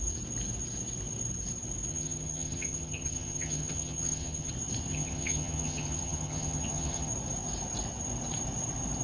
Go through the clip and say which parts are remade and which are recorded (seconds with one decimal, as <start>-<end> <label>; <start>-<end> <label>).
0.0-1.9 recorded; 1.9-4.5 remade; 4.5-4.9 recorded; 4.9-7.1 remade; 7.1-9.0 recorded